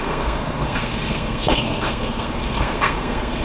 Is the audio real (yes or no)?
no